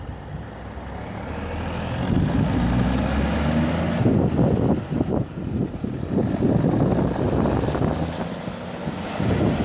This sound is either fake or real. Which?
real